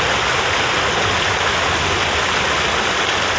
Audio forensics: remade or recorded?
recorded